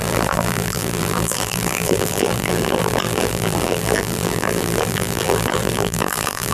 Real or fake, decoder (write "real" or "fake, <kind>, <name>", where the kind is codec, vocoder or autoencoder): fake, vocoder, BigVGAN v2